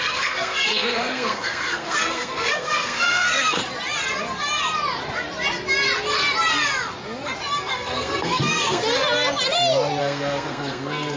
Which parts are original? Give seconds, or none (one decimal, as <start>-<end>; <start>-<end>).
3.6-7.7; 8.8-10.0